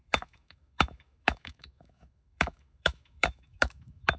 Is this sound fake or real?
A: fake